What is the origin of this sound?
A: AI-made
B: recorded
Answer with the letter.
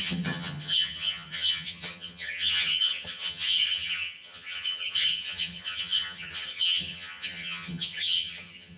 A